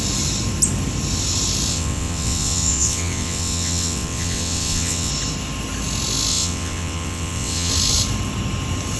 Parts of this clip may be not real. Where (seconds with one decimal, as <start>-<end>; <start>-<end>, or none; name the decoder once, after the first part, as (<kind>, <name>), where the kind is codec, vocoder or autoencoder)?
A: 1.7-5.1 (vocoder, WaveNeXt); 6.3-7.7